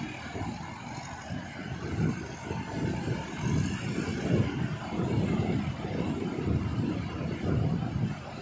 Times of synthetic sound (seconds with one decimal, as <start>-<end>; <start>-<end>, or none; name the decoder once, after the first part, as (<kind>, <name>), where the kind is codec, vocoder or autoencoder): none